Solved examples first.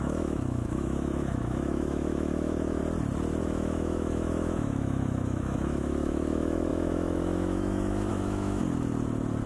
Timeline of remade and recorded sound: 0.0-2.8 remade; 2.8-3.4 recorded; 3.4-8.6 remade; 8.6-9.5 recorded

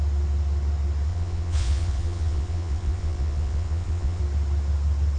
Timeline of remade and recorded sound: 0.0-1.1 recorded; 1.1-4.2 remade; 4.2-5.2 recorded

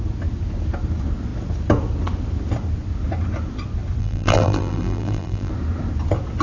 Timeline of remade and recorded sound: 0.0-4.0 recorded; 4.0-5.5 remade; 5.5-6.4 recorded

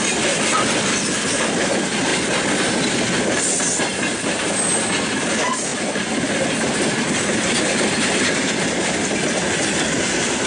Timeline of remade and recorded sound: 0.0-10.5 recorded

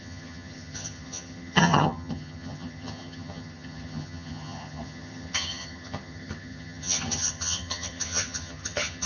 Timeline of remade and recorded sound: 0.0-9.1 remade

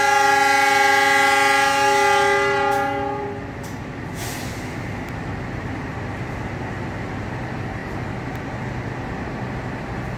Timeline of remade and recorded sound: 0.0-10.2 recorded

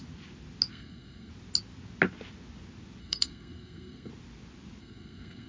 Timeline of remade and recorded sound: 0.0-0.7 recorded; 0.7-1.3 remade; 1.3-3.0 recorded; 3.0-4.1 remade; 4.1-4.8 recorded; 4.8-5.5 remade